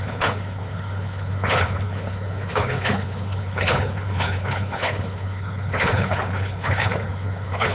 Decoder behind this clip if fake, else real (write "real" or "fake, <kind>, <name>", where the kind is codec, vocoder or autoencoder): fake, codec, HILCodec